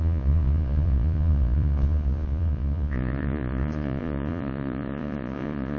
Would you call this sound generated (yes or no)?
yes